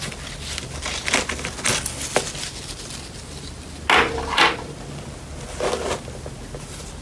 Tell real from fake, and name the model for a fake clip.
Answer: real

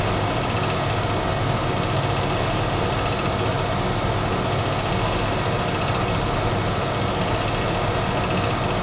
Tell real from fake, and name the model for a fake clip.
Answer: real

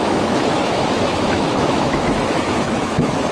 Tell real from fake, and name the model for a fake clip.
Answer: fake, autoencoder, DAC-VAE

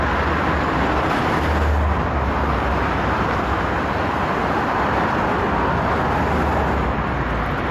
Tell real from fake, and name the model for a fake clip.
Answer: real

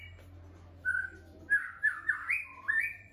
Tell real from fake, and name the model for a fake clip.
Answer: real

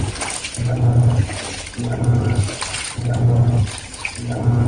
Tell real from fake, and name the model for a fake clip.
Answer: real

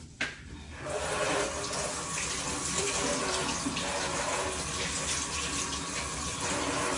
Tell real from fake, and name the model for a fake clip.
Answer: real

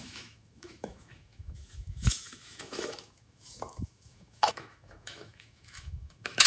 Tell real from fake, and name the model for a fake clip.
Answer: fake, autoencoder, DAC-VAE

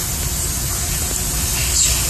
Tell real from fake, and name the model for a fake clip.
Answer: real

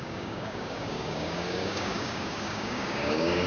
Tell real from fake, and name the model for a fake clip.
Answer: fake, codec, DAC